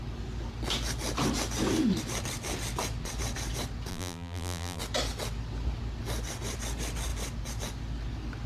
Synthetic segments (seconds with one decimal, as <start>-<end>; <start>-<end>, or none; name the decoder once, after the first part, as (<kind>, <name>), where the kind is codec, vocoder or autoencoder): 3.9-4.8 (vocoder, BigVGAN v2)

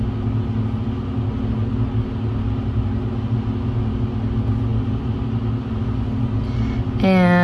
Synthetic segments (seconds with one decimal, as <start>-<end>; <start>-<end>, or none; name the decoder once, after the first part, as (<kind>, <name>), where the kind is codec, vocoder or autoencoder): 4.7-5.4 (vocoder, BigVGAN v2)

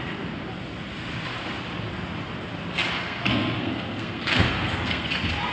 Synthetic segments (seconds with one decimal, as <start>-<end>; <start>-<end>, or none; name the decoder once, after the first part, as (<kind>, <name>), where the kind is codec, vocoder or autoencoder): 3.0-5.1 (codec, SNAC)

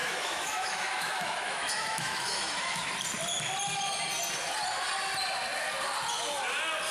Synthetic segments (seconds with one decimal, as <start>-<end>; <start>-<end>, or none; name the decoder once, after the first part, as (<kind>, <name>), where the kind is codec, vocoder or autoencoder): 0.0-2.9 (autoencoder, DAC-VAE)

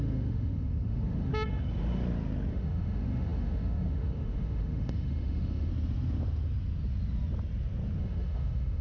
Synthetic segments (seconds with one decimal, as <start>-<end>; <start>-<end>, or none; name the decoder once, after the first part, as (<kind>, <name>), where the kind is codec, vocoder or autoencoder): 0.0-1.3 (autoencoder, DAC-VAE); 2.5-5.7; 8.0-8.8

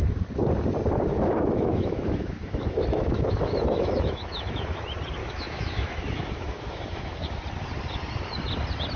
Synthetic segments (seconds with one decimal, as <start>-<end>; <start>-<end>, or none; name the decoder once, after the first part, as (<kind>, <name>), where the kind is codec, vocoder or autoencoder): 1.1-4.8 (autoencoder, DAC-VAE); 5.2-7.4

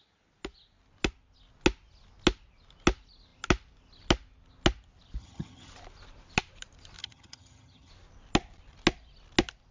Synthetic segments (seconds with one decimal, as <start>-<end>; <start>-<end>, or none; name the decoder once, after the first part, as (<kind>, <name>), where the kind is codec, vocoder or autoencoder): 5.2-5.7 (vocoder, HiFi-GAN); 7.0-7.9